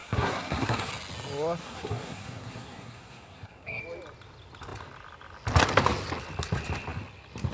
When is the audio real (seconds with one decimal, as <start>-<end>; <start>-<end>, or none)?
0.9-1.6; 3.8-7.5